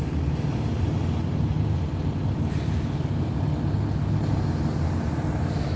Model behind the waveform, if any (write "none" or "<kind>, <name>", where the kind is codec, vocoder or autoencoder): none